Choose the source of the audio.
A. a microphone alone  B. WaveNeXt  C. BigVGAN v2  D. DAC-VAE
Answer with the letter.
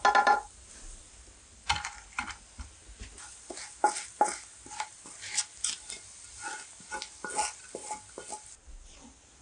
A